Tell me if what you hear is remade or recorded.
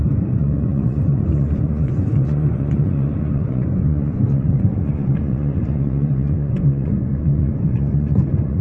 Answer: remade